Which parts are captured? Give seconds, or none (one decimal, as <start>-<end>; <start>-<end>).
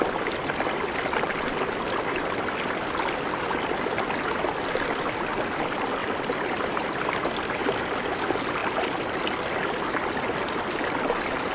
0.0-6.0; 6.7-8.6; 9.1-11.5